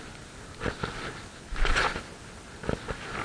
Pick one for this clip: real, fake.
real